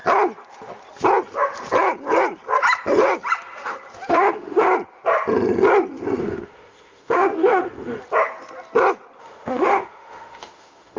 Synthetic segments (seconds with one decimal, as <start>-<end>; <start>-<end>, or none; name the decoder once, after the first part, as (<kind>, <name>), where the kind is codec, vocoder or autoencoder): 4.1-4.7 (autoencoder, DAC-VAE); 6.2-8.0; 9.2-11.0